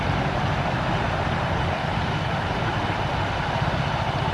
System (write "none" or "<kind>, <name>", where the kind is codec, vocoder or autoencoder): none